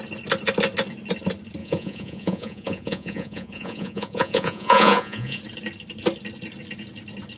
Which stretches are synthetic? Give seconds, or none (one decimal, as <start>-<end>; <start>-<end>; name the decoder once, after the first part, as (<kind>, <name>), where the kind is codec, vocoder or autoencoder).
1.6-5.4 (vocoder, Vocos)